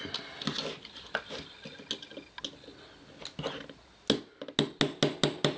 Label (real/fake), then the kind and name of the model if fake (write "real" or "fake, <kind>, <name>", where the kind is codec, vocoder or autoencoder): real